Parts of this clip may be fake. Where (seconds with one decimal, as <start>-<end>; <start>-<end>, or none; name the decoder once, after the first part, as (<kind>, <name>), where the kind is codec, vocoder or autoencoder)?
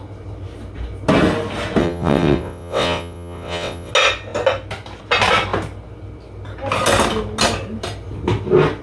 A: 1.8-3.9 (vocoder, WaveNeXt)